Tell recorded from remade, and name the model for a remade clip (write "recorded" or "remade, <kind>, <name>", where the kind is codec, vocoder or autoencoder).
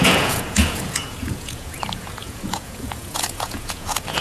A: remade, vocoder, Vocos